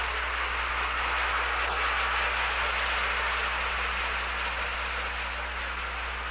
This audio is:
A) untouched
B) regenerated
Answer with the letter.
A